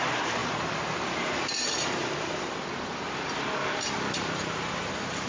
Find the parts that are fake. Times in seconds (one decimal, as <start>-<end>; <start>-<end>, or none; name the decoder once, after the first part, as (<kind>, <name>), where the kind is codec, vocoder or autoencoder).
0.0-5.3 (vocoder, BigVGAN v2)